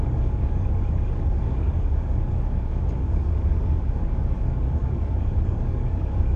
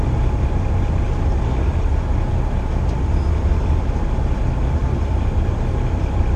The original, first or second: second